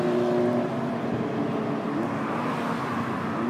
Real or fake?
real